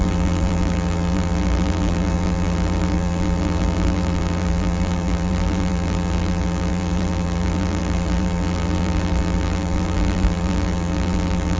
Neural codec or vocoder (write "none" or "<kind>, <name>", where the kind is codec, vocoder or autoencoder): vocoder, BigVGAN v2